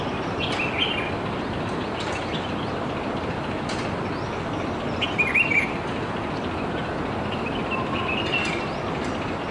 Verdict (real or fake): real